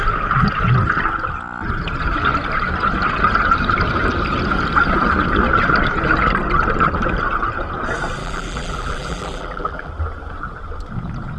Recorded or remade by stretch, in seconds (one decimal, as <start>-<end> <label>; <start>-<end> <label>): 0.0-8.2 recorded; 8.2-9.9 remade; 9.9-11.4 recorded